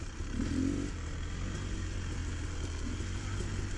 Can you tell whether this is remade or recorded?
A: recorded